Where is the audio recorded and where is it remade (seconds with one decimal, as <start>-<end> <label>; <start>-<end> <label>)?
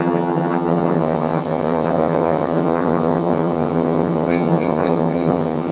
0.0-5.7 remade